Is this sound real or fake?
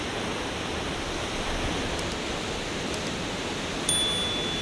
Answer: real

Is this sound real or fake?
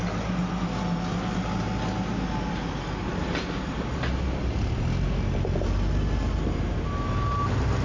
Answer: real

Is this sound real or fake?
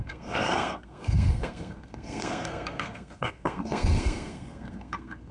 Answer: fake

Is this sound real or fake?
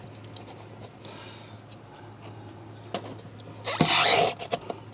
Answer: real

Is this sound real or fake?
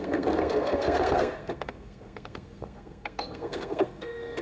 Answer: fake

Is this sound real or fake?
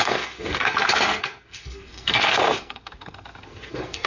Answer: fake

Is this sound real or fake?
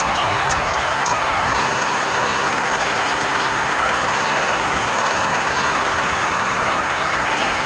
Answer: fake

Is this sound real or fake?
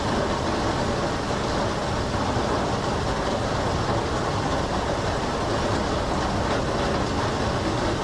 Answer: real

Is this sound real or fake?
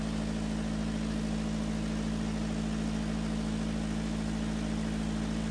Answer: real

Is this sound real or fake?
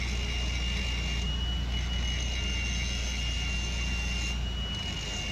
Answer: real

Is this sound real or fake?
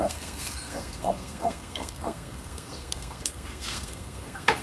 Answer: fake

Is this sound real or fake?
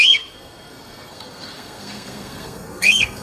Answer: fake